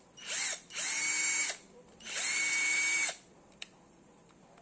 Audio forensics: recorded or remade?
remade